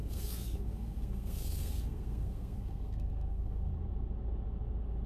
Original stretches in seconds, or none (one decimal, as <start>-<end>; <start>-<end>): 3.7-5.1